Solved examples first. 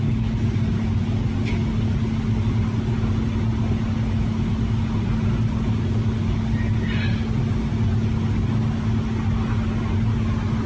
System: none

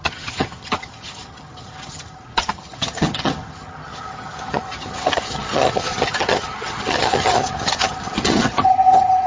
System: vocoder, HiFi-GAN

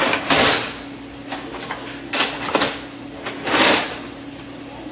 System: none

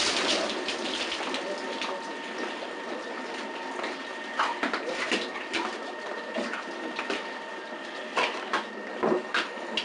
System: none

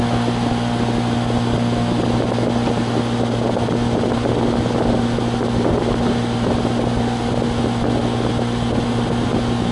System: none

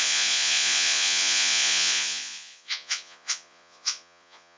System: vocoder, Vocos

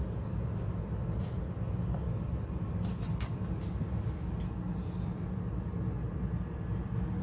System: none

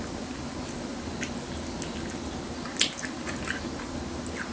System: none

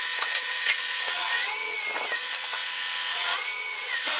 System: vocoder, WaveNeXt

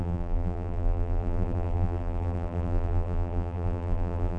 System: vocoder, BigVGAN v2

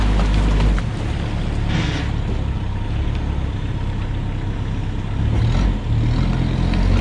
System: none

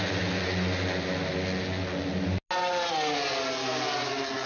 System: none